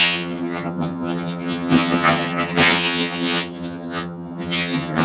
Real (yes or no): no